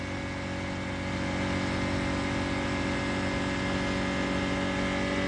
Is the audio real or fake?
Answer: real